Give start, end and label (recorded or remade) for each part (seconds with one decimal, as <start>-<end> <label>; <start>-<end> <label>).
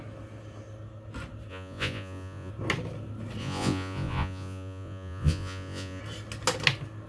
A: 0.0-1.5 recorded; 1.5-2.5 remade; 2.5-3.4 recorded; 3.4-6.0 remade; 6.0-7.1 recorded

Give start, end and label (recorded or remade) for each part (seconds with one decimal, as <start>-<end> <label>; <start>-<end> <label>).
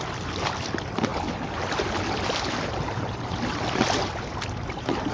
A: 0.0-5.1 recorded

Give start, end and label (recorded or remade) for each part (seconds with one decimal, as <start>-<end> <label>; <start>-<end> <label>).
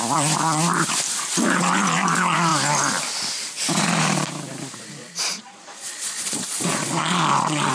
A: 0.0-5.0 recorded; 5.0-7.7 remade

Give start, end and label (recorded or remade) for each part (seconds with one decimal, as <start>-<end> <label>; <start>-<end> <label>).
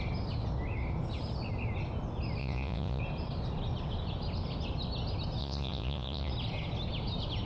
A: 0.0-2.4 recorded; 2.4-3.0 remade; 3.0-5.4 recorded; 5.4-6.3 remade; 6.3-7.5 recorded